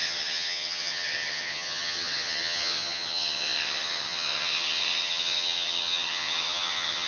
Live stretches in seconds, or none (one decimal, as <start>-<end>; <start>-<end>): none